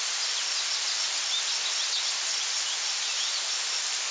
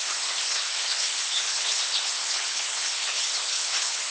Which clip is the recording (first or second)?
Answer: first